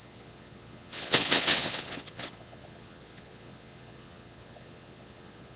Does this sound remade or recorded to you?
remade